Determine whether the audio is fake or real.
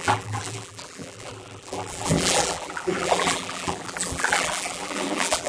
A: fake